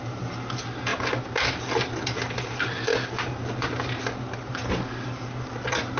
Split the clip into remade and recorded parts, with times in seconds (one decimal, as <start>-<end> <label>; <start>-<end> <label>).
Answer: 0.0-6.0 recorded